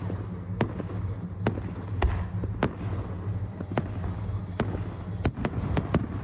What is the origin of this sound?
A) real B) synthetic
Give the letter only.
A